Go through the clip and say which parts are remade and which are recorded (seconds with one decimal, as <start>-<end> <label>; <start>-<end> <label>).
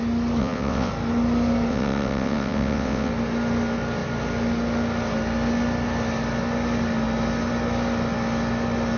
0.0-0.4 recorded; 0.4-0.9 remade; 0.9-1.7 recorded; 1.7-3.1 remade; 3.1-9.0 recorded